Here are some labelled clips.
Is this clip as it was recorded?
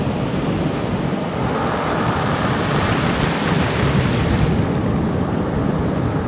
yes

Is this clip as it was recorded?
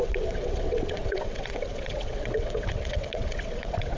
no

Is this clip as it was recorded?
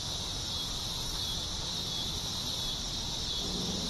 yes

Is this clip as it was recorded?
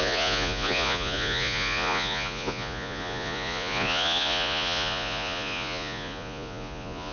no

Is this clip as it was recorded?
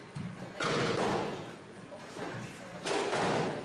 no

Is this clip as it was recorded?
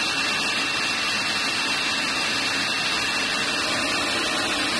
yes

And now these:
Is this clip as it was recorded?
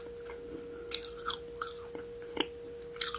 yes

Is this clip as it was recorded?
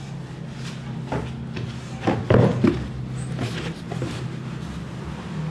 yes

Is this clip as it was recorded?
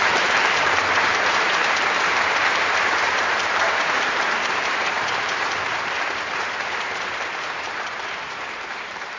no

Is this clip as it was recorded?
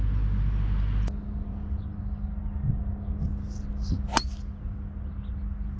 yes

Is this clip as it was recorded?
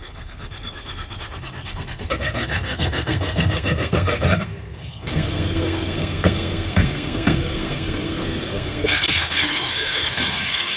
no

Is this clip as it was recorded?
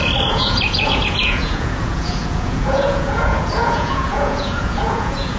no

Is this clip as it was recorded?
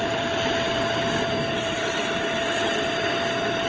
yes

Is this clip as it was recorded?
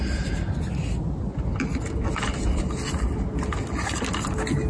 yes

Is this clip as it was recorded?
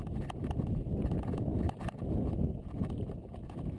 yes